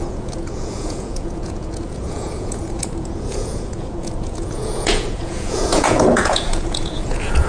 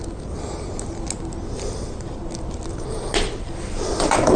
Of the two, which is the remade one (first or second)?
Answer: first